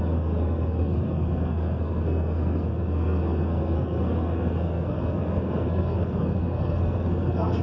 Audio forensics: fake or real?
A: fake